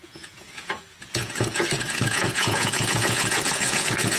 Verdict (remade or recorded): remade